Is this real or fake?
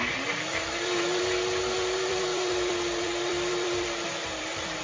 fake